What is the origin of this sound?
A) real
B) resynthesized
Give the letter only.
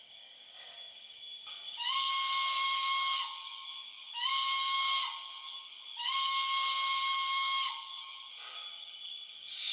B